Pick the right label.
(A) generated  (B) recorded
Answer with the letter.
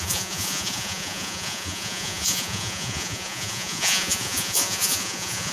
A